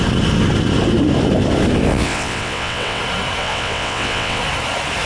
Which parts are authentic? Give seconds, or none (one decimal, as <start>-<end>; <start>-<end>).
0.0-1.9; 3.0-3.4; 4.4-5.1